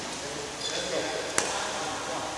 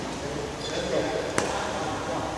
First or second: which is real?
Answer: first